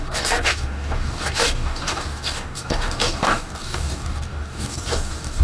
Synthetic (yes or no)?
yes